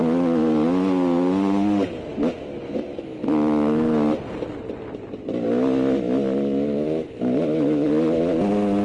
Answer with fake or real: real